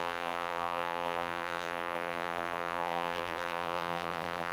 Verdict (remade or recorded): remade